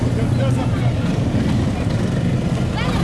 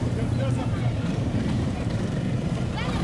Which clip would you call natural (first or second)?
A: first